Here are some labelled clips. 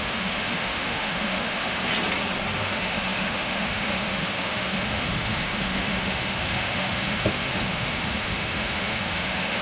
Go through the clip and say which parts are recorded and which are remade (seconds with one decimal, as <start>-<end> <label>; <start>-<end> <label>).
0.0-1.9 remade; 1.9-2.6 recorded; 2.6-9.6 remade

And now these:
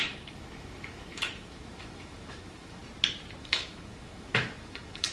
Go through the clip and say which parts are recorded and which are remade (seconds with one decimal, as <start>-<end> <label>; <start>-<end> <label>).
0.0-2.8 remade; 2.8-3.4 recorded; 3.4-5.1 remade

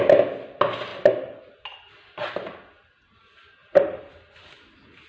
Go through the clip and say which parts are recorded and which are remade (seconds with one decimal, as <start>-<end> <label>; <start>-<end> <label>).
0.0-5.1 recorded